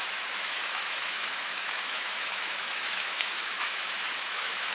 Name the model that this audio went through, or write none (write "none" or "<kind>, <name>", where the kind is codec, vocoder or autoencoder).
autoencoder, DAC-VAE